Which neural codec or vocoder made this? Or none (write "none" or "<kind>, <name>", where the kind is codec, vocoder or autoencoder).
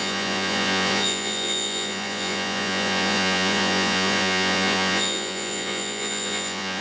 vocoder, Vocos